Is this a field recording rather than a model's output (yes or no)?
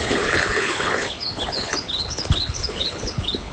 no